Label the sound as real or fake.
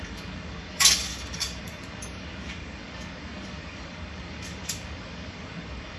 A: fake